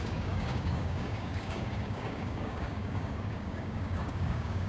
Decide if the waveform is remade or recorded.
remade